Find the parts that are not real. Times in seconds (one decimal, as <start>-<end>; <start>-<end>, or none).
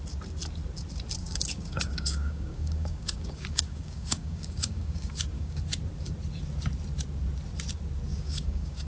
1.2-5.6; 8.1-8.9